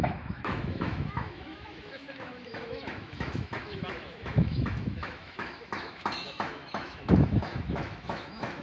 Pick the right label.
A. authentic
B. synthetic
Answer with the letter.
B